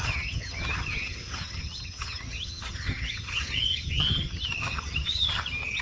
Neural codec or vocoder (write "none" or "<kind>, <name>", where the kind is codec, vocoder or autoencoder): vocoder, HiFi-GAN